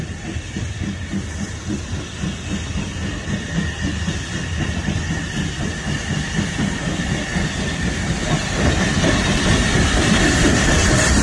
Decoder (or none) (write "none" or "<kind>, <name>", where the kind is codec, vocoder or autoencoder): none